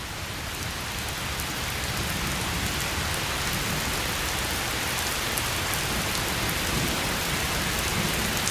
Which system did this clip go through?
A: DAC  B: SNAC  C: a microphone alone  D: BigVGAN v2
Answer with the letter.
C